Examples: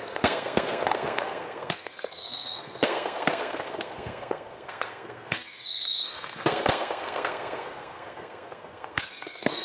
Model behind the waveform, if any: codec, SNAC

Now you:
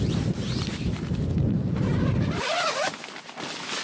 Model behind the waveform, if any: none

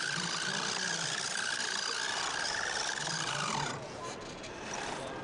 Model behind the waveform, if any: none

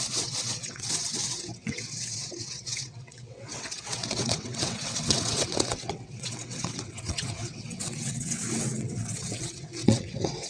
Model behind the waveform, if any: vocoder, WaveNeXt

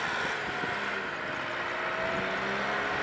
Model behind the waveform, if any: none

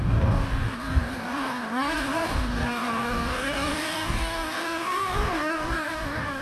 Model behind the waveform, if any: codec, DAC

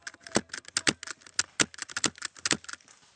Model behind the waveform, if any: none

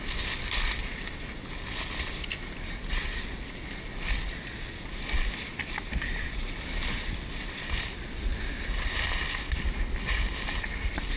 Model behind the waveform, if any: none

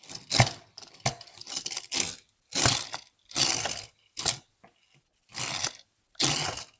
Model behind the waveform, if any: none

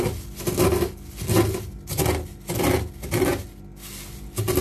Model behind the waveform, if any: none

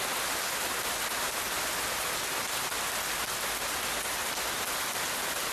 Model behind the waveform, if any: none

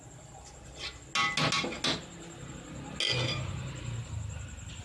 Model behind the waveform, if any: none